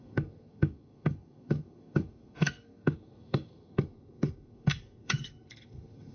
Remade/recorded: remade